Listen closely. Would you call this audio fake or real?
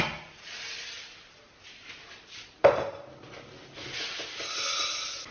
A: real